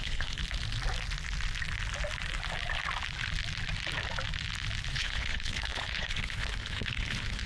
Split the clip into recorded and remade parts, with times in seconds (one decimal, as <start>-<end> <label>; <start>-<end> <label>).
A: 0.0-0.4 remade; 0.4-4.9 recorded; 4.9-7.5 remade